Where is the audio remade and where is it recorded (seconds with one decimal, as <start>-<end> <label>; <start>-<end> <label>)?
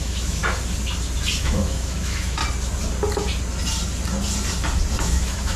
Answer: 0.0-0.4 remade; 0.4-1.4 recorded; 1.4-2.4 remade; 2.4-5.0 recorded; 5.0-5.6 remade